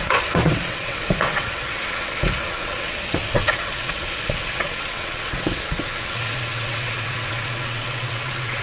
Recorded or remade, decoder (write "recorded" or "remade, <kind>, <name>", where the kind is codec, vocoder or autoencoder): remade, vocoder, WaveNeXt